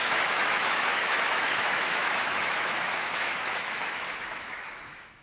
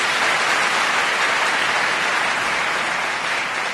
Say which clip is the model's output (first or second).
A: first